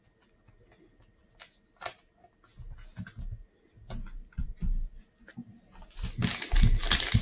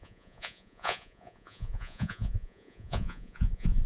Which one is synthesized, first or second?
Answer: second